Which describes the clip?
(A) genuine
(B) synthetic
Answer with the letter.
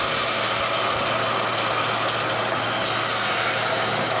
B